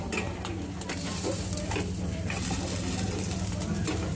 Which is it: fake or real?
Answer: real